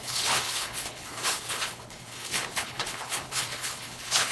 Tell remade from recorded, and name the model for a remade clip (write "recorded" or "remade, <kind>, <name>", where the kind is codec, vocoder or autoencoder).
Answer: remade, codec, HILCodec